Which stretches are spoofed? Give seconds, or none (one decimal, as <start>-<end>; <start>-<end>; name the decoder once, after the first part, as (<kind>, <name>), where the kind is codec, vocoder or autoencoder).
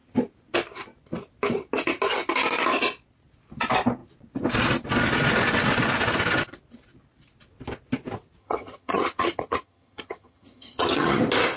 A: 8.4-11.2 (vocoder, HiFi-GAN)